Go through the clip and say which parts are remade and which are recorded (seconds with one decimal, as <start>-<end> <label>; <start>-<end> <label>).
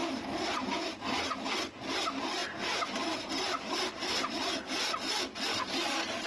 0.0-6.3 recorded